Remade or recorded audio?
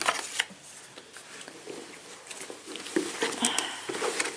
recorded